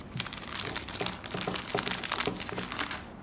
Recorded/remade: recorded